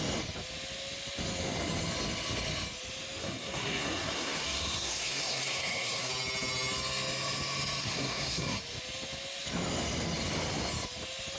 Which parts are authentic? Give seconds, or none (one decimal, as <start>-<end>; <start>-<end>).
0.0-3.2; 6.1-7.8; 8.6-11.4